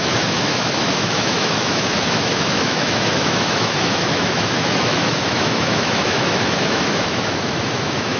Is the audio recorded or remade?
remade